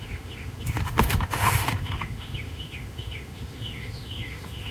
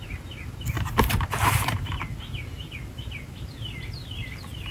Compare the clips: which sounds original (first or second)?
second